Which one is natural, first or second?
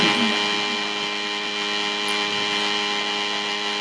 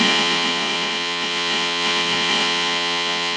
first